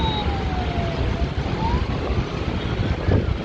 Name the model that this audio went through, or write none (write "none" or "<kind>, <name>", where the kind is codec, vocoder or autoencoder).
none